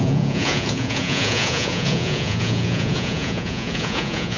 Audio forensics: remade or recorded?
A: remade